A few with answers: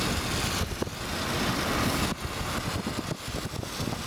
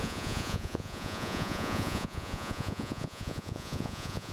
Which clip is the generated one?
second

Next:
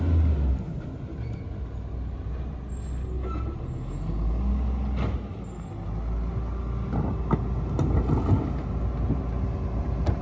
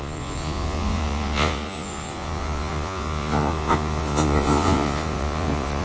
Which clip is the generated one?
second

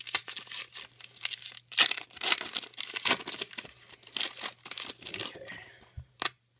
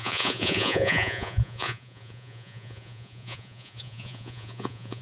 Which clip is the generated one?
second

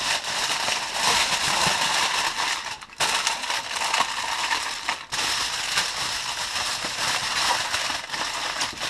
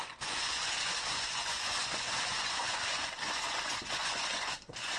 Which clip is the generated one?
second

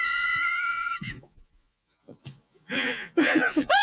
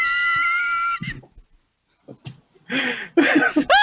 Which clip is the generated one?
first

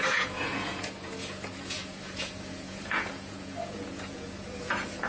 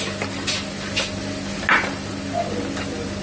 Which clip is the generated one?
first